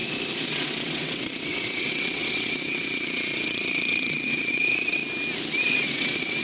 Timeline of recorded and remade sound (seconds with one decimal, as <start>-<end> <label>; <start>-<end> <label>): 0.0-0.5 recorded; 0.5-5.0 remade; 5.0-5.6 recorded; 5.6-6.4 remade